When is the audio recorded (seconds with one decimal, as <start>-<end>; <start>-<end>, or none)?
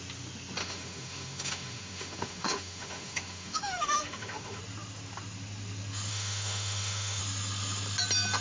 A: 0.0-0.6; 4.6-6.1; 7.2-8.4